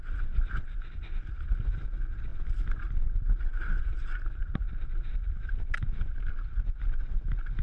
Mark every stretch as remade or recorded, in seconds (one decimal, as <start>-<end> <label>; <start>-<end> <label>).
0.0-7.6 recorded